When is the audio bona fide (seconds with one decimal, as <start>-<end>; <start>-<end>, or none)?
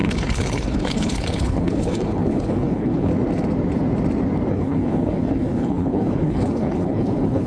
3.1-4.5